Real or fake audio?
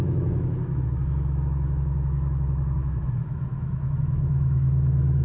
fake